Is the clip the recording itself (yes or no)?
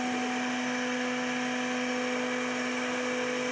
yes